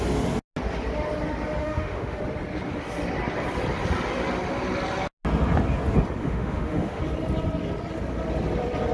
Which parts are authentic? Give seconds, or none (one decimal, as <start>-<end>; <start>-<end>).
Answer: 0.0-1.6; 2.2-6.2; 7.0-8.9